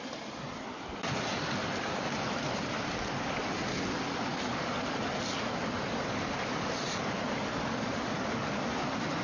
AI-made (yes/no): no